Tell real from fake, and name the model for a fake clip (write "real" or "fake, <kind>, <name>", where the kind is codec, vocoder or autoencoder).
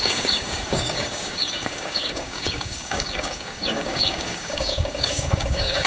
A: fake, codec, DAC